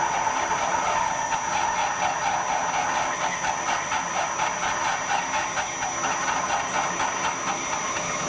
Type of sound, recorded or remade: recorded